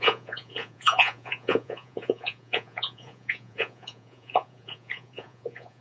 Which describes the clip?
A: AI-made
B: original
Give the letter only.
A